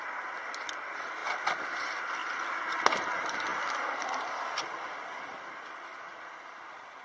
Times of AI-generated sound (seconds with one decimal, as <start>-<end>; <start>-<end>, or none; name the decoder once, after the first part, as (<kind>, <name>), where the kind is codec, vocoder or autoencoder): 0.0-1.2 (vocoder, BigVGAN v2); 1.8-2.2; 3.0-3.5; 4.6-6.1